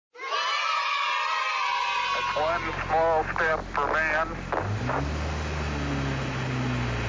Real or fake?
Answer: real